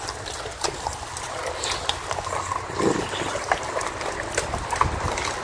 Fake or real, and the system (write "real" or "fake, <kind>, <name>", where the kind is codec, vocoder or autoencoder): real